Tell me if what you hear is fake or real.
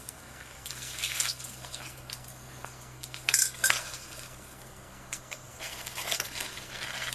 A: fake